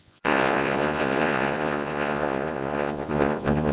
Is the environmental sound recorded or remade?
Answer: remade